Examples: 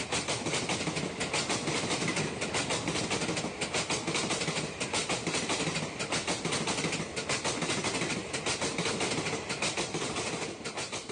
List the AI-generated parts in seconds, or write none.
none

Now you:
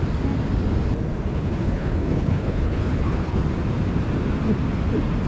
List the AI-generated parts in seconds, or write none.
1.3-3.4 (codec, HILCodec)

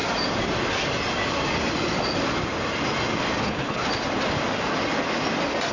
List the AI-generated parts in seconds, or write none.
3.4-3.8 (codec, HILCodec)

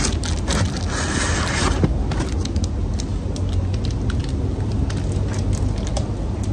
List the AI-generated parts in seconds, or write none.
none

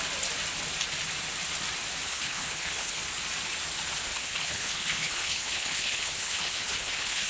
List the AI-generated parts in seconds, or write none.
2.1-3.0 (codec, HILCodec); 4.1-7.3

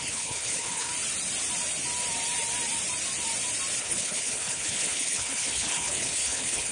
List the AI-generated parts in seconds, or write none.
0.0-0.9 (codec, HILCodec); 3.8-6.7

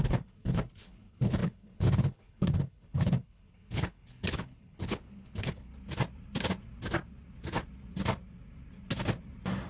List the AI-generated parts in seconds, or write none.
0.0-5.7 (codec, HILCodec)

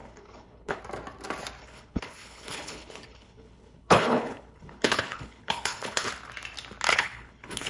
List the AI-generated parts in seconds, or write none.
0.0-0.8 (codec, HILCodec); 1.6-6.1; 6.9-7.7